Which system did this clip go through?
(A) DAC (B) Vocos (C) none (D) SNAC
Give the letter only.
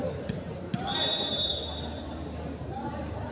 C